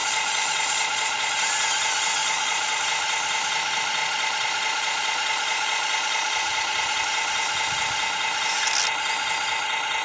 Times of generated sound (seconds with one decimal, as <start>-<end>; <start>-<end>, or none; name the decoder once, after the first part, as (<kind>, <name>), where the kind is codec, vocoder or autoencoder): 0.0-1.3 (vocoder, Vocos); 2.2-2.8; 4.0-7.0